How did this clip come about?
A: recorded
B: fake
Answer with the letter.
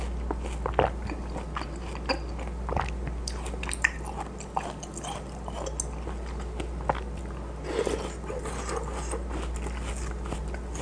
A